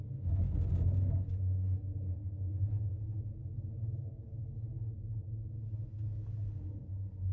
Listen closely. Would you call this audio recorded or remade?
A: recorded